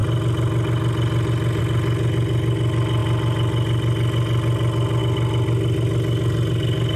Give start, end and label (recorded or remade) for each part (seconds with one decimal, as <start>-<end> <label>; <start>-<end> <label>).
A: 0.0-7.0 recorded